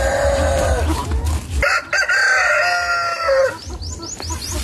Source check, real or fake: real